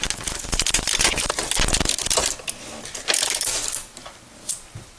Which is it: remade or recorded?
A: recorded